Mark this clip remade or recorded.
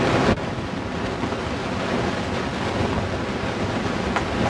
recorded